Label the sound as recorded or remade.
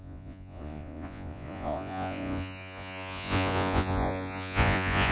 remade